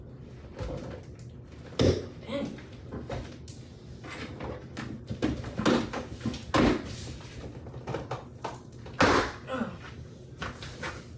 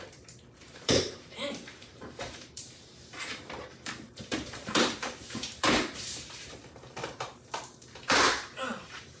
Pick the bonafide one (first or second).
first